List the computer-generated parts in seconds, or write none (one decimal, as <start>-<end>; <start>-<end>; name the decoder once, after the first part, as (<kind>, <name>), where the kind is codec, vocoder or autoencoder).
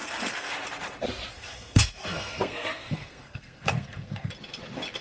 0.0-0.5 (codec, SNAC); 1.3-4.3